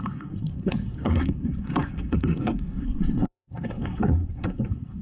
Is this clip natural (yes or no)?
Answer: no